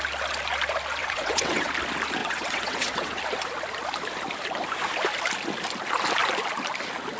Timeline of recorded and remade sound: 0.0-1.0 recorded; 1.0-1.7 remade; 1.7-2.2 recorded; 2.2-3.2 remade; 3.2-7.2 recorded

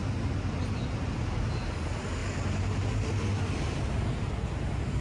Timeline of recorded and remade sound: 0.0-5.0 recorded

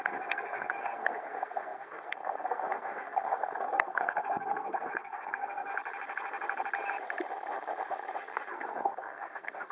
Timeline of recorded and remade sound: 0.0-5.7 remade; 5.7-8.5 recorded; 8.5-9.7 remade

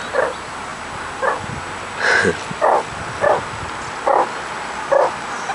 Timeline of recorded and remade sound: 0.0-5.5 recorded

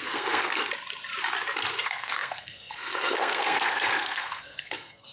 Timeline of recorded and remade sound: 0.0-0.6 remade; 0.6-1.8 recorded; 1.8-5.1 remade

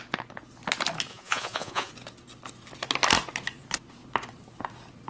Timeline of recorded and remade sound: 0.0-1.1 recorded; 1.1-1.9 remade; 1.9-5.1 recorded

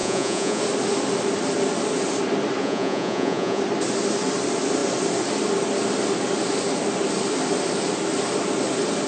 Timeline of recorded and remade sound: 0.0-0.6 remade; 0.6-2.6 recorded; 2.6-3.6 remade; 3.6-9.1 recorded